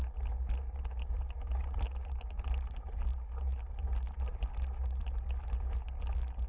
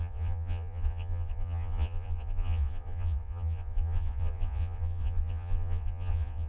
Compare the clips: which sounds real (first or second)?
first